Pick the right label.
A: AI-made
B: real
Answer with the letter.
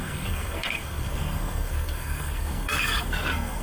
A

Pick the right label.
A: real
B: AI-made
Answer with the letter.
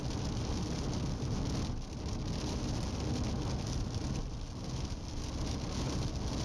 A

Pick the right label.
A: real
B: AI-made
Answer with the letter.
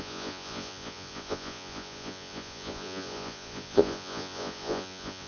B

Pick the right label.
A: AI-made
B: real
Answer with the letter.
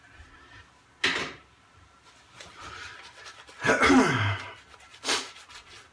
B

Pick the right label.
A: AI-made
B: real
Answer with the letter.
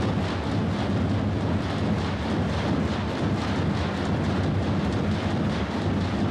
B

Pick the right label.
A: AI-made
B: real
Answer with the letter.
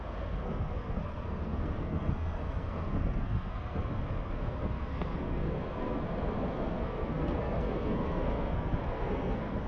A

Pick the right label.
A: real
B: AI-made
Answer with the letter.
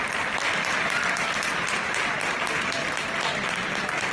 A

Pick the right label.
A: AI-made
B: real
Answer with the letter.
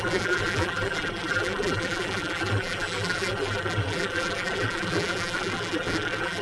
A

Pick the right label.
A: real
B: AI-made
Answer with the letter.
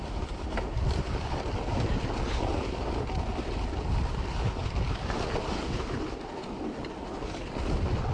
A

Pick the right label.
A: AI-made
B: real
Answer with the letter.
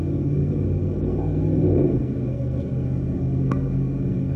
A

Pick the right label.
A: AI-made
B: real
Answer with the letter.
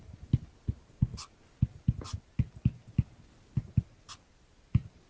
B